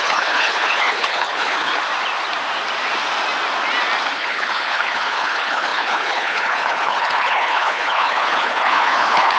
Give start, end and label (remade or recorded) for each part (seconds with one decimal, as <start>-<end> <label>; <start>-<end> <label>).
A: 0.0-1.7 remade; 1.7-4.1 recorded; 4.1-9.4 remade